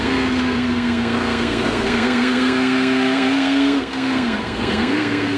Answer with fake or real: fake